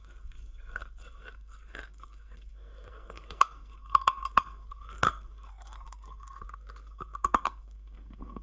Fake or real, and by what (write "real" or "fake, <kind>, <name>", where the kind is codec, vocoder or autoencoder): fake, codec, SNAC